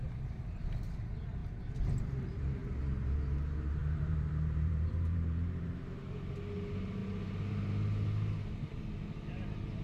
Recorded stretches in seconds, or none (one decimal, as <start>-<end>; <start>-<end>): 0.0-3.8; 6.0-9.8